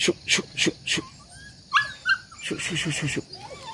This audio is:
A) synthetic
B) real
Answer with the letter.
B